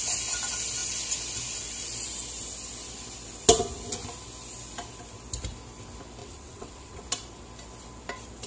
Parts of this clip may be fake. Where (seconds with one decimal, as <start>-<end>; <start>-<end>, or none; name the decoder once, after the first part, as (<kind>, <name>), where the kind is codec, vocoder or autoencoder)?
6.2-7.0 (vocoder, WaveNeXt)